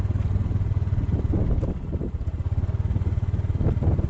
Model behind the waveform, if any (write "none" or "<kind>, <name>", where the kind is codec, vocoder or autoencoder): none